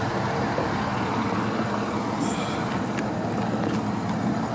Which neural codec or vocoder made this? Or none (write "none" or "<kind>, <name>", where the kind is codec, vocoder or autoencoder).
none